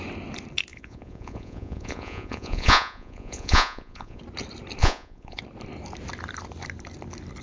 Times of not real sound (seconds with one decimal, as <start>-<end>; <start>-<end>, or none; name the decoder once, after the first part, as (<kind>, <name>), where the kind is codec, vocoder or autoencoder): 0.7-4.2 (vocoder, Vocos); 4.8-5.4